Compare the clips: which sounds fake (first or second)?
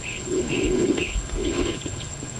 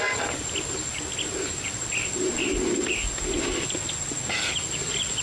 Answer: first